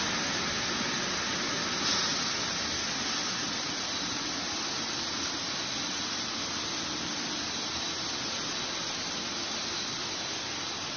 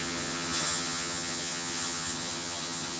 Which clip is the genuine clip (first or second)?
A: first